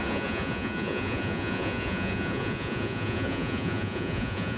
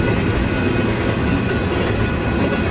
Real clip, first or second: second